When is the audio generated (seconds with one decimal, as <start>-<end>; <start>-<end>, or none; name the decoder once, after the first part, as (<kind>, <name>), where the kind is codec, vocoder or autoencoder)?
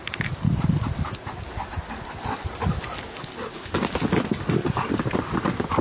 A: none